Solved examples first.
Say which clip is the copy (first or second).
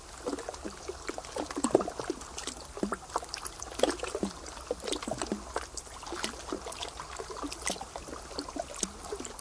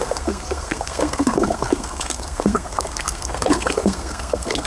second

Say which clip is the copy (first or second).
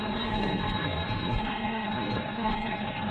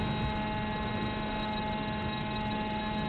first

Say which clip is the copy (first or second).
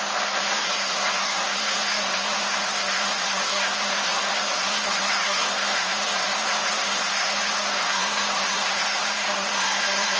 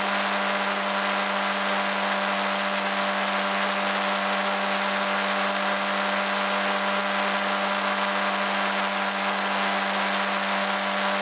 first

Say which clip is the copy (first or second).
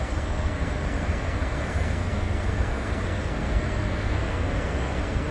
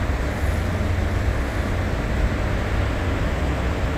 first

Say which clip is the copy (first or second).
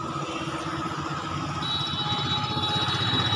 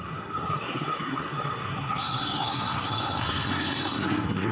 second